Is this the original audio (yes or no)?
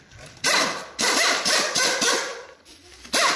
yes